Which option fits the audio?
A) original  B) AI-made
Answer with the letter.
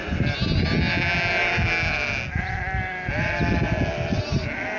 A